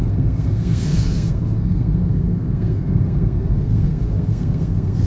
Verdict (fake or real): fake